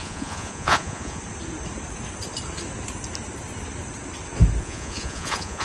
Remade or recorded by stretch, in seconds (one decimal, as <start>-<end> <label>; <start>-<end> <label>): 0.0-1.2 remade; 1.2-4.6 recorded; 4.6-5.6 remade